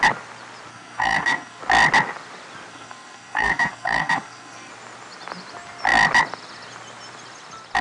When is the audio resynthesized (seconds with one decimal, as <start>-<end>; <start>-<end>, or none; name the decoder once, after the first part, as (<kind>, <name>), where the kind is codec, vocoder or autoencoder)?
0.7-1.6 (codec, SNAC); 2.7-4.7